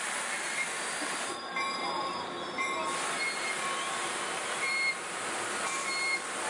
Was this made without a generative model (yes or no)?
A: no